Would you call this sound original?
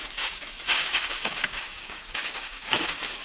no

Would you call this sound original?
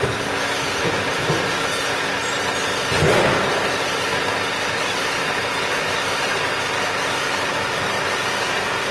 yes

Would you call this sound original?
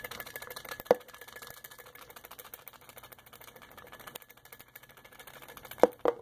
yes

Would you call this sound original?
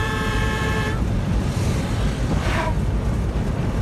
no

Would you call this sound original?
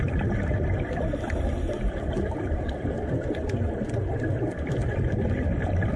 yes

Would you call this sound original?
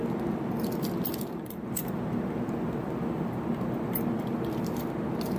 no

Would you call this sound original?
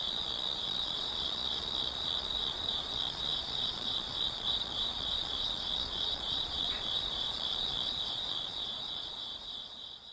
no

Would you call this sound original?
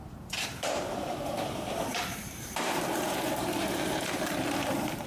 no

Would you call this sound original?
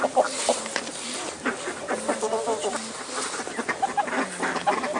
no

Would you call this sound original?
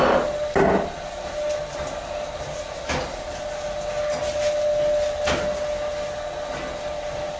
yes